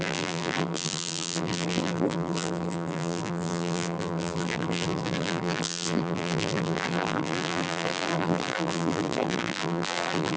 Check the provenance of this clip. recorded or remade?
remade